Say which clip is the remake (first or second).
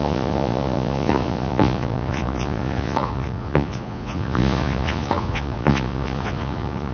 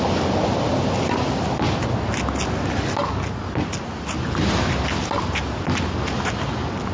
first